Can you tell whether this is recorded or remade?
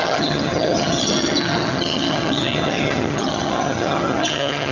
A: remade